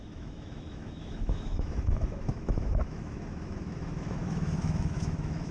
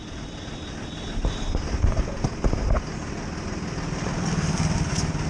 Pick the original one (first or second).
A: second